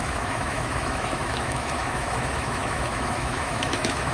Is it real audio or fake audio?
fake